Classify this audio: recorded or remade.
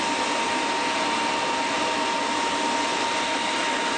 recorded